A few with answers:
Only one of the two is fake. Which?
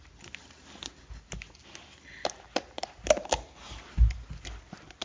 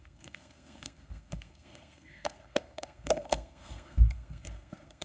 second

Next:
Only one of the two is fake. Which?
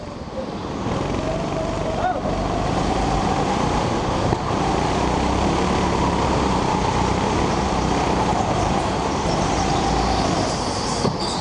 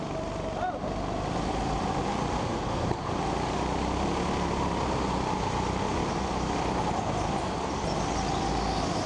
first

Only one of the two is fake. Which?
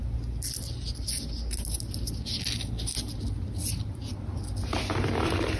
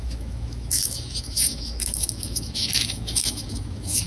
second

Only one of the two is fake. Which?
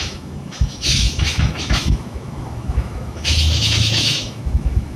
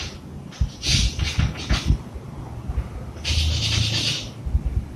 first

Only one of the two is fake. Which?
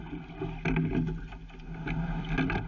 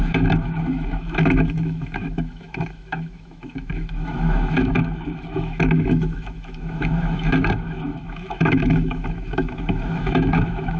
second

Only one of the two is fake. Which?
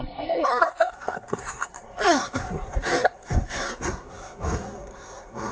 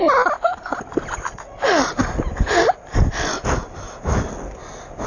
first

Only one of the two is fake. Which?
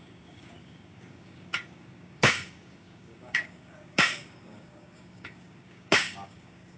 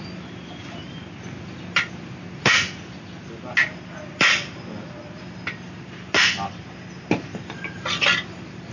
first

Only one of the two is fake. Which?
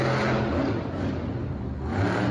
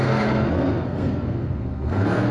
second